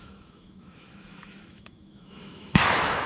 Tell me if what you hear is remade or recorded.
remade